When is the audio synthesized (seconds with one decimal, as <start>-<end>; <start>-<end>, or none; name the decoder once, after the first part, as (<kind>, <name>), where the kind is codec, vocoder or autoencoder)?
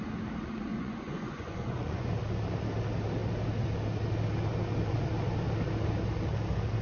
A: 0.7-2.1 (vocoder, Vocos)